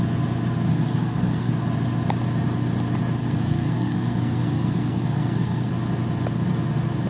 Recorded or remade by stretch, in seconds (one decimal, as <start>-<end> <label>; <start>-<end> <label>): 0.0-0.7 recorded; 0.7-1.5 remade; 1.5-3.2 recorded; 3.2-5.7 remade; 5.7-7.1 recorded